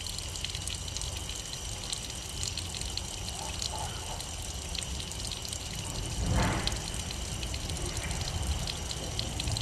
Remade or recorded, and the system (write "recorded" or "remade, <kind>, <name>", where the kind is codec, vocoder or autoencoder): recorded